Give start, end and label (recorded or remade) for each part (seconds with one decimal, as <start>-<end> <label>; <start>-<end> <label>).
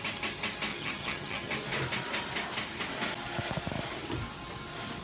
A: 0.0-0.7 recorded; 0.7-1.5 remade; 1.5-5.0 recorded